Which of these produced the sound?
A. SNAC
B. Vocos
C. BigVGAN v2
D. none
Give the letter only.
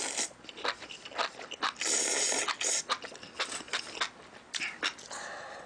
D